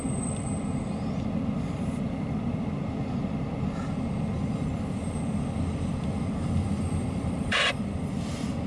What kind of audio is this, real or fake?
real